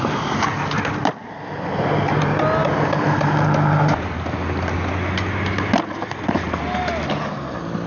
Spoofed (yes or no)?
no